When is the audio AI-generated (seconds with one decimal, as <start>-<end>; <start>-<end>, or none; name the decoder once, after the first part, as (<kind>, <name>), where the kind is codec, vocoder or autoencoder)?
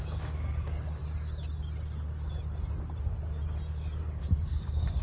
0.0-1.0 (codec, DAC); 4.0-5.0